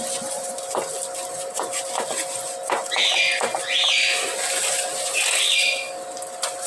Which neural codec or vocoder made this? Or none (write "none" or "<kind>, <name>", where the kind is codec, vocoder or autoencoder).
none